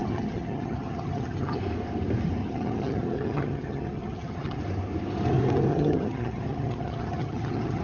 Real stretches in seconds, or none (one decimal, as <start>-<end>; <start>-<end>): 1.6-2.4; 4.6-5.7